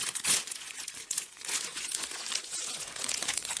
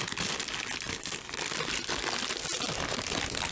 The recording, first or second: second